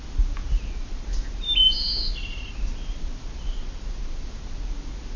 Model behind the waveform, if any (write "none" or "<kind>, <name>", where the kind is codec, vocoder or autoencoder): none